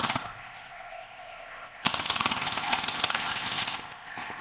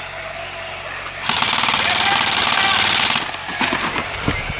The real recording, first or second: second